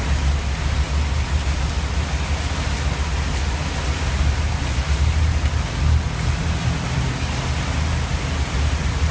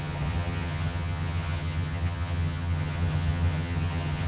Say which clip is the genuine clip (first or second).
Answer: first